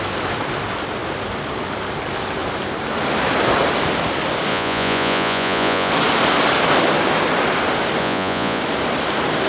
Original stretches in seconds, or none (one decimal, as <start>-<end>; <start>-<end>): 0.0-4.5; 5.9-8.0; 8.6-9.5